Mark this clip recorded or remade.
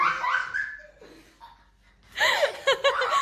recorded